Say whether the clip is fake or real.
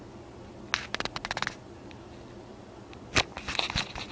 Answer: real